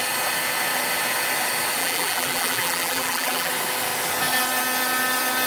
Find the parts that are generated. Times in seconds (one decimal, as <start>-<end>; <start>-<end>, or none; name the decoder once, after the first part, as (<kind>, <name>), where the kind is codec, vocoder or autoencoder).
1.8-3.5 (vocoder, BigVGAN v2)